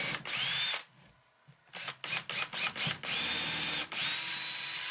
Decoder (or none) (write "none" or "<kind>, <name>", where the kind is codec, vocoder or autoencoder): none